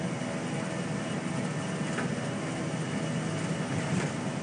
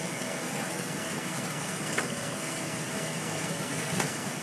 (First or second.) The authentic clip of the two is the first